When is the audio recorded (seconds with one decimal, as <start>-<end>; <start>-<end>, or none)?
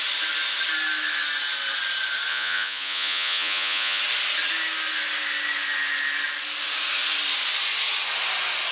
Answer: 0.0-2.3; 4.0-8.7